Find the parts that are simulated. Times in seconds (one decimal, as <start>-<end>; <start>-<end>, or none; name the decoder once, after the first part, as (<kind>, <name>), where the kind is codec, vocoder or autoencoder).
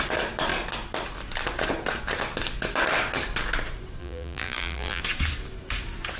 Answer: 4.0-5.0 (vocoder, BigVGAN v2)